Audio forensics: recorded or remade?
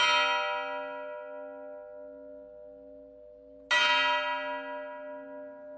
recorded